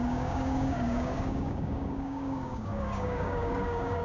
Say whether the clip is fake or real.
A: fake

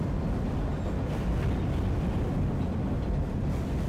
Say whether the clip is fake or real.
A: real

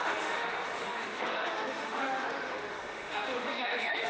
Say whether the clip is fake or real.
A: fake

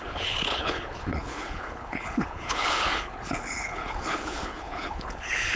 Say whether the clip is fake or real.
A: fake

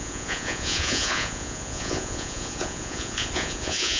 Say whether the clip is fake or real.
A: fake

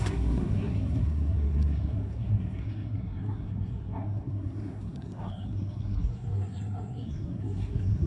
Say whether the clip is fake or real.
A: fake